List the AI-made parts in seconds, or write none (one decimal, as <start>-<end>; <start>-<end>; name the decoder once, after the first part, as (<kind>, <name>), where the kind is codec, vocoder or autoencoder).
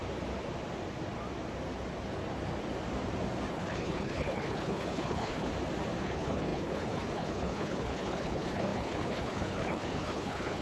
3.5-5.5 (codec, HILCodec); 6.0-10.6